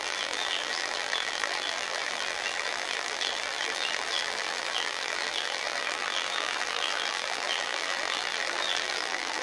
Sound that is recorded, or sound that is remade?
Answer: remade